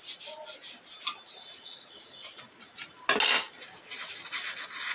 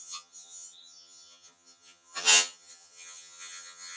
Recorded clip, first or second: first